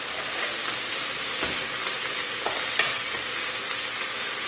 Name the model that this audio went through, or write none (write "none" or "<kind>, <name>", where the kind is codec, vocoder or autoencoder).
none